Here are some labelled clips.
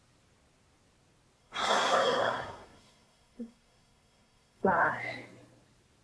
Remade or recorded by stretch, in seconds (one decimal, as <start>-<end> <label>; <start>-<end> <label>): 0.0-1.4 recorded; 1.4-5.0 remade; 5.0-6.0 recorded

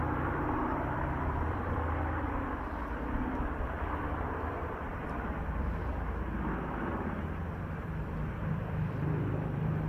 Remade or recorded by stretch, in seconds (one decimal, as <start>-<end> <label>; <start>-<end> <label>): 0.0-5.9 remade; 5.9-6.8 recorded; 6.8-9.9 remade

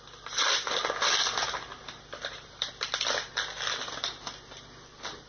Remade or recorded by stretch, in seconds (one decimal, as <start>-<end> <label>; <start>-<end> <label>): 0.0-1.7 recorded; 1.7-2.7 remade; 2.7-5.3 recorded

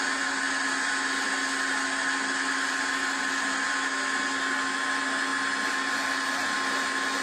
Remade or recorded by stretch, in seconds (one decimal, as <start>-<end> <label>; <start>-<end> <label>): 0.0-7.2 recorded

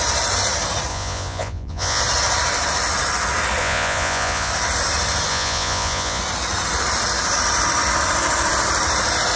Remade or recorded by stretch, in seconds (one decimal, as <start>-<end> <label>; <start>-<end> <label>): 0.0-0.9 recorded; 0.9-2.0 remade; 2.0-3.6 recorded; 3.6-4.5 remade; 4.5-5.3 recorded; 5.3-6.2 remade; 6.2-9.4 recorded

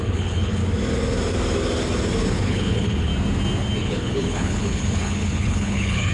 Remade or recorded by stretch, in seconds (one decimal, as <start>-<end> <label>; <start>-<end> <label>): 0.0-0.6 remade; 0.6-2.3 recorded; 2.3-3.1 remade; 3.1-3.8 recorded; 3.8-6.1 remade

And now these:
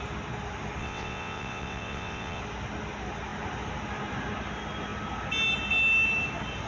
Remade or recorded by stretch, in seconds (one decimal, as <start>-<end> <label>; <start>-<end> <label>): 0.0-0.8 recorded; 0.8-2.4 remade; 2.4-6.7 recorded